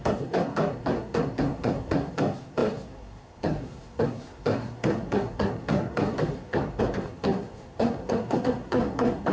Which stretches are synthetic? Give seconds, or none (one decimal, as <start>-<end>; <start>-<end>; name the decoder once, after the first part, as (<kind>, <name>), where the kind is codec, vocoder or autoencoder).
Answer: 0.0-9.3 (codec, SNAC)